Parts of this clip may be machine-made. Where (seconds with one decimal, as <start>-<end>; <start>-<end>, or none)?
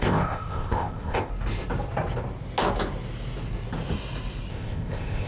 0.0-1.3; 4.5-5.3